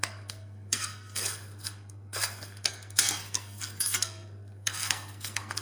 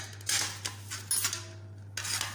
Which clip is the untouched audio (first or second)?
second